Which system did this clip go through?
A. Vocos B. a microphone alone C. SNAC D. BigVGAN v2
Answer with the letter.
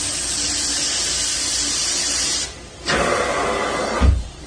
B